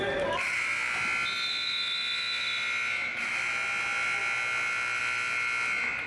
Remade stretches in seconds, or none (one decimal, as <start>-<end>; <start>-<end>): none